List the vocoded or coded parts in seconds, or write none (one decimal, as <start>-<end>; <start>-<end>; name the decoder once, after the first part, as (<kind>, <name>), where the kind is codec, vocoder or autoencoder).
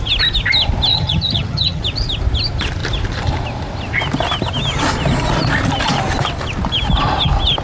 0.9-1.8 (vocoder, HiFi-GAN)